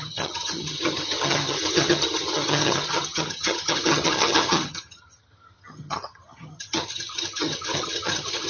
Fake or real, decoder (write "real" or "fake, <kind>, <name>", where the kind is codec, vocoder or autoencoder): fake, vocoder, HiFi-GAN